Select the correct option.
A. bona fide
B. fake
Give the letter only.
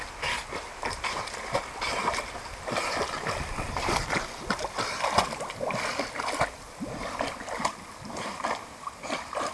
A